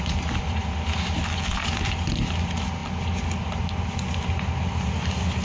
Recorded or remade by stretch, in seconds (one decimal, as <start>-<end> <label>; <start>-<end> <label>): 0.0-5.4 recorded